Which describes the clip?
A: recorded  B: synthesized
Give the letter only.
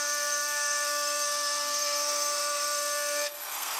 B